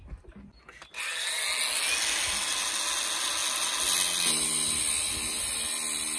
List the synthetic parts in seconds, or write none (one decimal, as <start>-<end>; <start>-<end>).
none